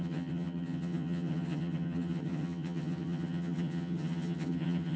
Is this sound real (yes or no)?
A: no